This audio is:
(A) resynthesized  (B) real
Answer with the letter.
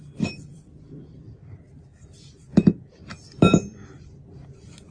A